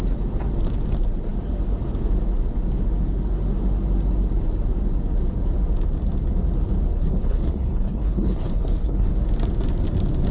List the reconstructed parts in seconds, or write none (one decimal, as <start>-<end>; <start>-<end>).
6.9-9.1